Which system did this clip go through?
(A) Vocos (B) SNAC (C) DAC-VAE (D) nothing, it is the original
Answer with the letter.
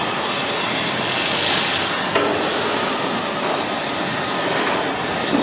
D